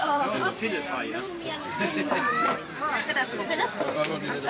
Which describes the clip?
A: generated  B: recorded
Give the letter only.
A